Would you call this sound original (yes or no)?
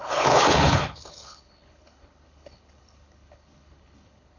no